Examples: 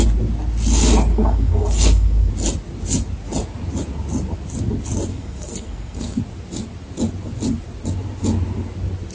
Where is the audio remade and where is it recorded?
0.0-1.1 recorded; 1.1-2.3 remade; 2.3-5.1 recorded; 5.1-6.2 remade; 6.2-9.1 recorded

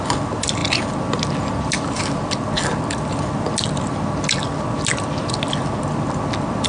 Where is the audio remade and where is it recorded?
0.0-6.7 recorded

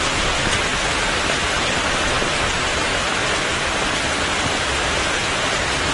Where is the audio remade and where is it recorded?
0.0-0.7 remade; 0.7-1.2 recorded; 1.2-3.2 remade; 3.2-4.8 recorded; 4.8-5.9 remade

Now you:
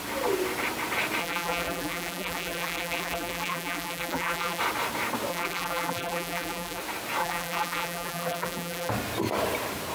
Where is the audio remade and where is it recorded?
0.0-1.2 recorded; 1.2-4.6 remade; 4.6-5.3 recorded; 5.3-6.8 remade; 6.8-7.2 recorded; 7.2-8.9 remade; 8.9-9.9 recorded

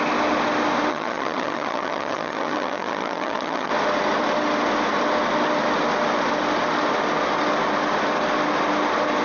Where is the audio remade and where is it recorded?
0.0-0.9 recorded; 0.9-3.7 remade; 3.7-9.2 recorded